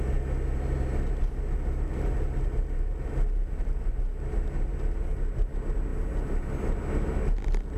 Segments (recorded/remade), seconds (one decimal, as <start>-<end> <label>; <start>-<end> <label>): 0.0-7.8 recorded